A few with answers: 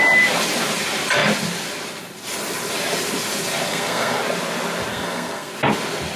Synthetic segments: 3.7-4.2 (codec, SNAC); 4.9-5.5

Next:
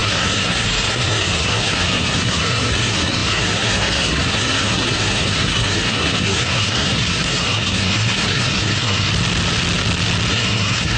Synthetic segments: 0.0-9.1 (codec, SNAC); 10.3-11.0

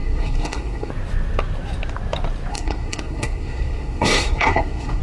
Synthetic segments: 0.0-0.9 (codec, SNAC); 2.5-5.0